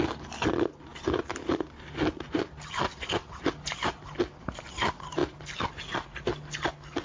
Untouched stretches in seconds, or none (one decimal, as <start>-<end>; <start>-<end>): 0.0-7.0